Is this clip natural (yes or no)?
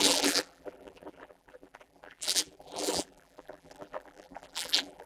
no